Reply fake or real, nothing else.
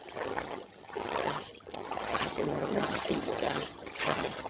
fake